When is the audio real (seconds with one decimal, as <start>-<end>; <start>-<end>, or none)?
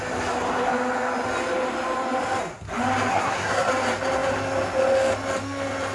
0.0-3.1; 3.7-5.9